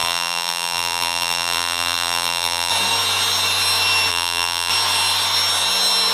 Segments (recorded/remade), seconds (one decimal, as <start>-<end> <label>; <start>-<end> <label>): 0.0-2.7 remade; 2.7-4.1 recorded; 4.1-4.7 remade; 4.7-6.1 recorded